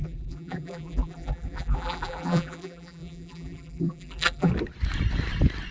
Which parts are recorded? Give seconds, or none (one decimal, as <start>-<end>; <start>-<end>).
4.5-5.7